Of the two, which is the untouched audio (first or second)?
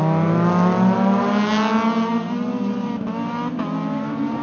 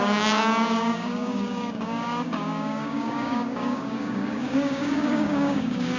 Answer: first